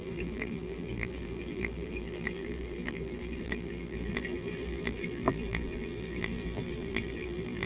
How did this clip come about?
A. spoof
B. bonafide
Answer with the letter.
A